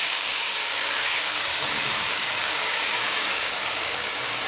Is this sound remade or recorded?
remade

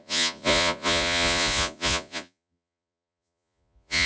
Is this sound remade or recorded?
remade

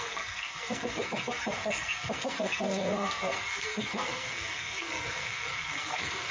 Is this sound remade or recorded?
remade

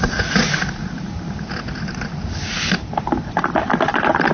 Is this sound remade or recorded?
recorded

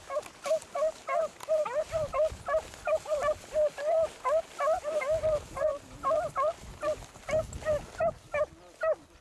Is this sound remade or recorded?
recorded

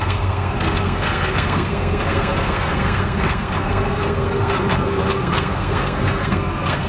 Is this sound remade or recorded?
remade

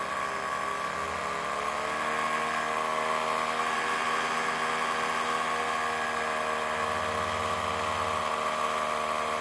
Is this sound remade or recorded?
recorded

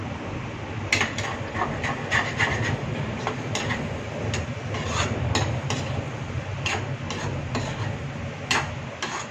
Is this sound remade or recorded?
recorded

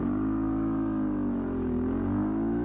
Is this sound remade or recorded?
remade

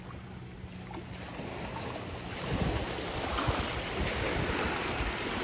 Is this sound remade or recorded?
recorded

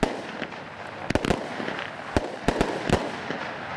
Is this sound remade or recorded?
recorded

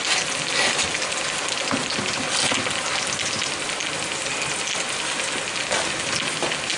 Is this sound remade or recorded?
recorded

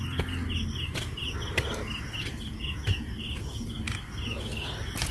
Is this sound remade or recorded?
recorded